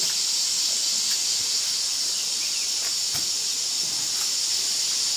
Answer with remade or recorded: recorded